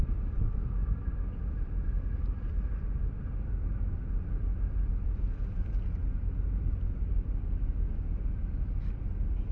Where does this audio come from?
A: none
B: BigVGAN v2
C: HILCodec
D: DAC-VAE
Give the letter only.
A